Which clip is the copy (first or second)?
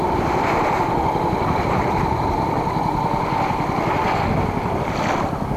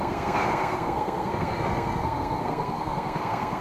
second